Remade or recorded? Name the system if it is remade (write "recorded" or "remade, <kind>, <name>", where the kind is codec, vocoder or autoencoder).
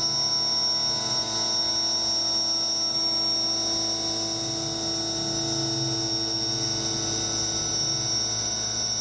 recorded